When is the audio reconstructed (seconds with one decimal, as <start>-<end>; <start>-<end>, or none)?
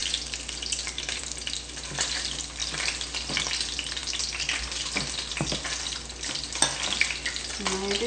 none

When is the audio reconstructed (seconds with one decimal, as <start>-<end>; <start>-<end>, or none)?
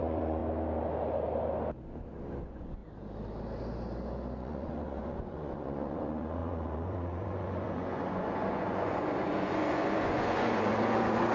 0.0-0.4; 2.4-2.8; 4.4-11.3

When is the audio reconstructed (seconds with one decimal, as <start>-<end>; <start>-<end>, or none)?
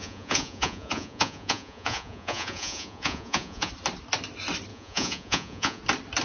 0.0-3.7; 4.7-5.8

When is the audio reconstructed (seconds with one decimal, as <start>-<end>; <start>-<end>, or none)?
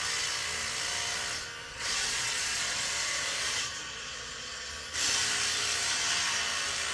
1.7-4.7